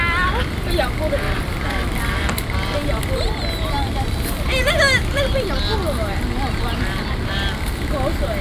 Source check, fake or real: real